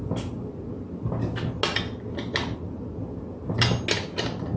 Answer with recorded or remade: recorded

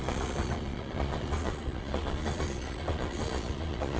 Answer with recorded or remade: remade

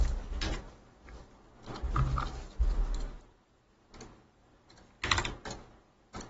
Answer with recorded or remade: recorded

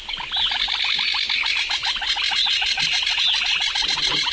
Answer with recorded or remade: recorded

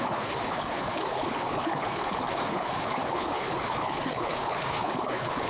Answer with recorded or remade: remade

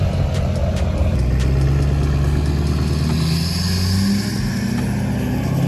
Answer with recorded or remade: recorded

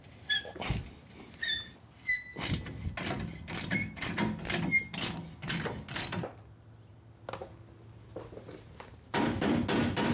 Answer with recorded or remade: recorded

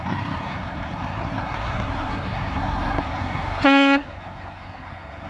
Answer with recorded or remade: remade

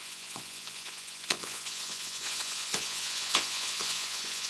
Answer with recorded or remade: remade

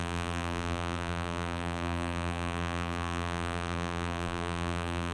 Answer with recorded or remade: remade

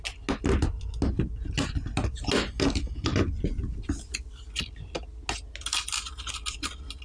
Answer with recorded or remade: recorded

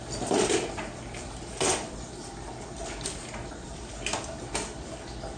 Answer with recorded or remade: recorded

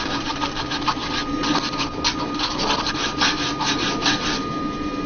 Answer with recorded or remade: recorded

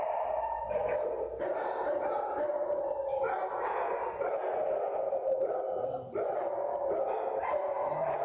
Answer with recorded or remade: recorded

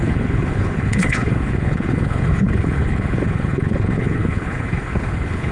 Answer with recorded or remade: remade